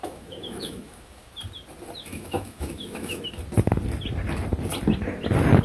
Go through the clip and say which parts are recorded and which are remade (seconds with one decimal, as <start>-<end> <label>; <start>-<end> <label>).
0.0-1.3 remade; 1.3-2.1 recorded; 2.1-3.2 remade; 3.2-5.6 recorded